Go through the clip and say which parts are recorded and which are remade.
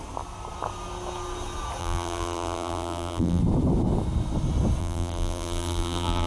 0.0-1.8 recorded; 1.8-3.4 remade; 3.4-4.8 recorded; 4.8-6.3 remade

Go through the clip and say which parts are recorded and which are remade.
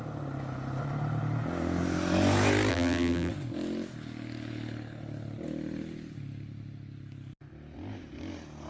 0.0-2.7 recorded; 2.7-3.3 remade; 3.3-8.7 recorded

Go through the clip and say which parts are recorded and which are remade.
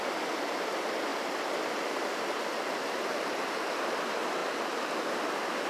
0.0-1.1 recorded; 1.1-2.1 remade; 2.1-4.4 recorded; 4.4-4.9 remade; 4.9-5.7 recorded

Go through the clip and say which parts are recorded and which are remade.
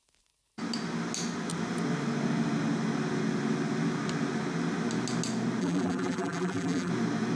0.0-5.6 recorded; 5.6-6.9 remade; 6.9-7.4 recorded